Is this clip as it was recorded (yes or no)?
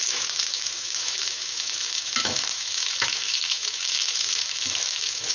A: no